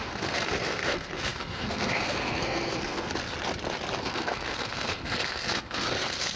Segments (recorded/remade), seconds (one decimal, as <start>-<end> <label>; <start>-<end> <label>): 0.0-3.1 remade; 3.1-4.0 recorded; 4.0-6.4 remade